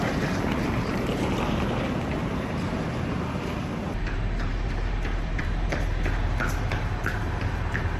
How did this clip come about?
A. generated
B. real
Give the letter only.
A